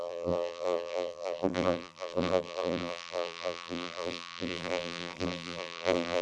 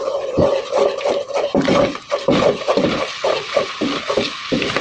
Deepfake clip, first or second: first